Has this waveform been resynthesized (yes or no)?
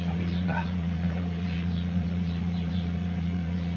yes